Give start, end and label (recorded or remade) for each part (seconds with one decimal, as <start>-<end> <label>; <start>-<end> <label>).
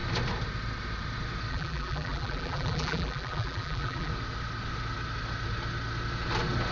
0.0-1.5 recorded; 1.5-4.1 remade; 4.1-6.7 recorded